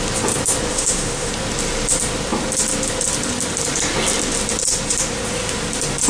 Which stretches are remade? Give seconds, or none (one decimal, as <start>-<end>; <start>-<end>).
0.7-1.3